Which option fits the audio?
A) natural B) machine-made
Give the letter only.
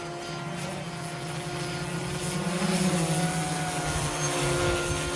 A